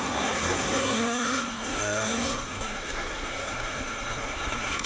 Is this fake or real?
fake